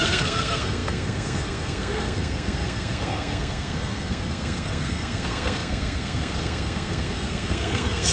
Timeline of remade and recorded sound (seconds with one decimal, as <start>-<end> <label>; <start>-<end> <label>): 0.0-8.1 remade